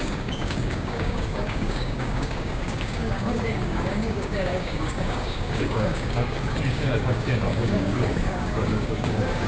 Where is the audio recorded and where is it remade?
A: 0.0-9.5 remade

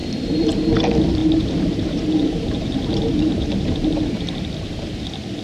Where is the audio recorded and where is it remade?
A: 0.0-0.6 remade; 0.6-1.2 recorded; 1.2-4.4 remade; 4.4-5.4 recorded

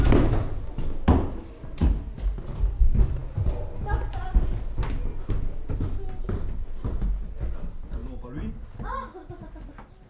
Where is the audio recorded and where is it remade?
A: 0.0-10.1 recorded

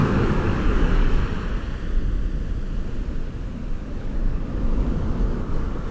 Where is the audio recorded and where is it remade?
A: 0.0-1.2 remade; 1.2-3.7 recorded; 3.7-5.9 remade

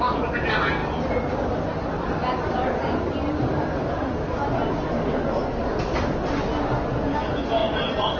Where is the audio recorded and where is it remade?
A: 0.0-8.2 recorded